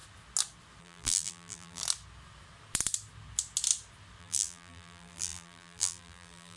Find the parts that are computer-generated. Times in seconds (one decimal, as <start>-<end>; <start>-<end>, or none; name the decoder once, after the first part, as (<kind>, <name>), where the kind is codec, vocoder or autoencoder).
0.8-1.8 (vocoder, BigVGAN v2); 4.2-6.6

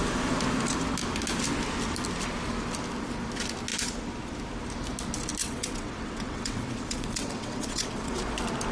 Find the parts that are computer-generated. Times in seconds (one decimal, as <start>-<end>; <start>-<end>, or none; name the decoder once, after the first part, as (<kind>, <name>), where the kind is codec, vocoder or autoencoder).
5.4-8.2 (vocoder, WaveNeXt)

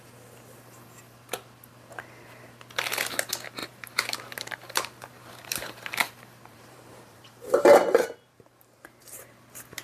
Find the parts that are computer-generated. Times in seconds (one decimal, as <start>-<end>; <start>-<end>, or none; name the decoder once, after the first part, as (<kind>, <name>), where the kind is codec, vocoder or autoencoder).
3.6-8.8 (vocoder, BigVGAN v2)

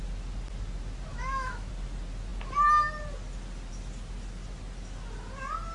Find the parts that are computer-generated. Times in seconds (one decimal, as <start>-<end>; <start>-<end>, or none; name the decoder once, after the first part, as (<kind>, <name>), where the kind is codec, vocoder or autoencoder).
1.1-1.7 (autoencoder, DAC-VAE)

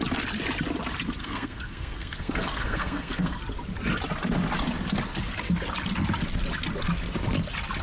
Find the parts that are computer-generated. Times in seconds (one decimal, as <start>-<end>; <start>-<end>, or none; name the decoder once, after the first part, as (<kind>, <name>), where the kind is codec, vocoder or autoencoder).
1.2-3.4 (codec, SNAC)

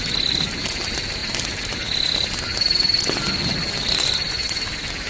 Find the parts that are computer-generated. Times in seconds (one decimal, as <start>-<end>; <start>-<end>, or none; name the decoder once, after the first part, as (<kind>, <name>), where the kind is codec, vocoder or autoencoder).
none